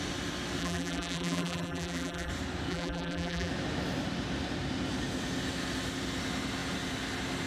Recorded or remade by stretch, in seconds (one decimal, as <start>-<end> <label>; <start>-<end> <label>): 0.0-0.6 recorded; 0.6-2.3 remade; 2.3-2.7 recorded; 2.7-3.5 remade; 3.5-7.5 recorded